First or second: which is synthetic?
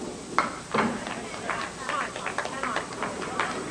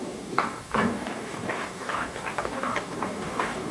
second